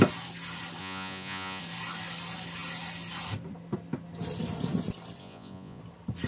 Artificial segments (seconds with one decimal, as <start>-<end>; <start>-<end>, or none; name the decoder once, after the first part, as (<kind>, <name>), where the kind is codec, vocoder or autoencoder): 0.8-1.6 (vocoder, Vocos); 5.2-5.8